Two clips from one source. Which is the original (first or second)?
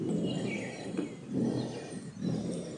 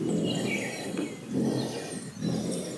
second